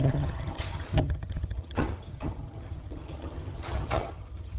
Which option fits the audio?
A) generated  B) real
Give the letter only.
A